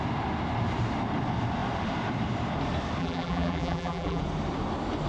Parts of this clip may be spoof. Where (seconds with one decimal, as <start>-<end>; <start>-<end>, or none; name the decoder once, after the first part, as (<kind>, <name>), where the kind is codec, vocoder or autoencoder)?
3.0-4.2 (vocoder, BigVGAN v2)